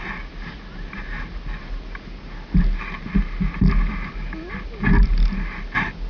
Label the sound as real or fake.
real